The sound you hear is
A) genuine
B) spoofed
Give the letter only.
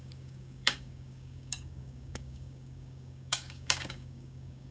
B